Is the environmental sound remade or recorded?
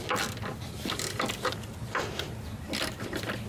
recorded